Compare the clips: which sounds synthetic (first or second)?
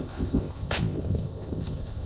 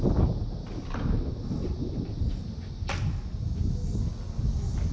first